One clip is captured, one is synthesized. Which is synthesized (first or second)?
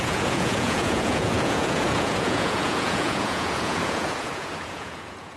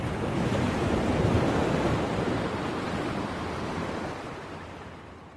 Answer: first